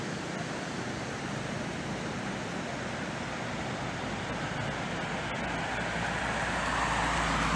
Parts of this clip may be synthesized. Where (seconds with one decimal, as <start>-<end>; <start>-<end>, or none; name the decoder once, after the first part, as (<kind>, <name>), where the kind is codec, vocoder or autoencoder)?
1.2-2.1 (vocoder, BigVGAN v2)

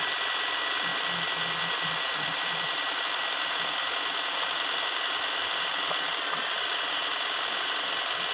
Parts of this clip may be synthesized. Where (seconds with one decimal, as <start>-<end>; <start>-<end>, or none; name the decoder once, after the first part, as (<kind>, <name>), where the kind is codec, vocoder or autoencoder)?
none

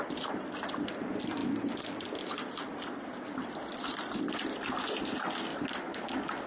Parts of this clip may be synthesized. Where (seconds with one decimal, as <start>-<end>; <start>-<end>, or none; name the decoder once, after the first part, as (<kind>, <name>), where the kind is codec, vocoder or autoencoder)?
none

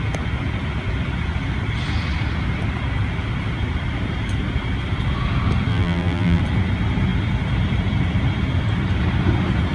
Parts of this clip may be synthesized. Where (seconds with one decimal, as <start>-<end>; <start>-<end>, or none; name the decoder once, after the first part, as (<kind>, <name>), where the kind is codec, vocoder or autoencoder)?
5.7-6.4 (vocoder, BigVGAN v2)

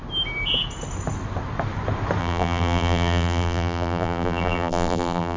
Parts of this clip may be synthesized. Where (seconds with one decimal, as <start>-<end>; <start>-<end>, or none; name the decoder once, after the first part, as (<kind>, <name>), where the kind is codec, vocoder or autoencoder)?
2.2-5.4 (vocoder, BigVGAN v2)